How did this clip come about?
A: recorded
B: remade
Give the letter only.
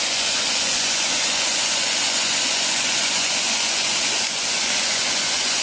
B